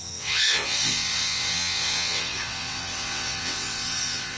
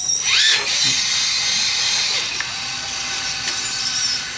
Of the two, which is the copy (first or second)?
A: first